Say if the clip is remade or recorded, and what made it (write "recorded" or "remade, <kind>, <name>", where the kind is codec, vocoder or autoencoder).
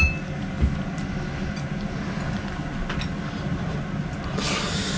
recorded